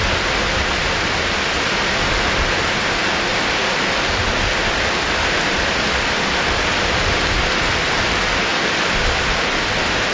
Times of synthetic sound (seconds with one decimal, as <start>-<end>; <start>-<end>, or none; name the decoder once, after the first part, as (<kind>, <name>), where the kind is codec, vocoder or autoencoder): 3.3-4.2 (vocoder, BigVGAN v2)